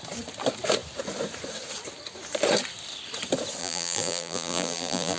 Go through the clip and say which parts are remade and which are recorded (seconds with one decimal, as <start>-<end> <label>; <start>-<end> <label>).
0.0-3.6 recorded; 3.6-5.2 remade